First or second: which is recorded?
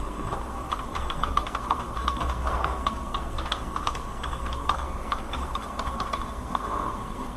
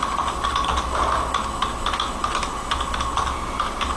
second